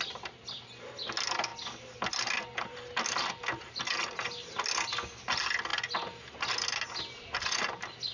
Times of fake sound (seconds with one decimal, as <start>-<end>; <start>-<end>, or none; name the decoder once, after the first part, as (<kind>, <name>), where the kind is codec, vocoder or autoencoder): none